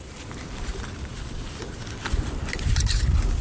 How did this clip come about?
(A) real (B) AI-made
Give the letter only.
A